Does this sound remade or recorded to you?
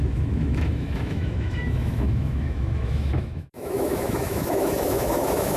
remade